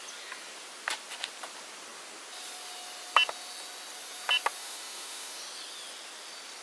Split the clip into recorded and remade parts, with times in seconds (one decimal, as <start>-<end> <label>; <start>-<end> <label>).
0.0-4.6 recorded; 4.6-5.4 remade; 5.4-6.6 recorded